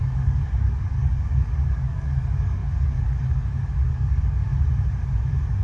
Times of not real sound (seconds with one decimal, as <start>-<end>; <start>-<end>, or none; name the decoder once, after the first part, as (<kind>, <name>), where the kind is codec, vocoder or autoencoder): 0.0-4.5 (codec, DAC)